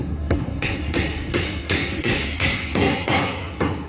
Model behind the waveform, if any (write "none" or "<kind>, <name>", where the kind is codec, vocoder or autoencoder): codec, SNAC